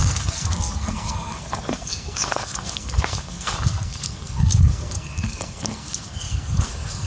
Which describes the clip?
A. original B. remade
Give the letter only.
B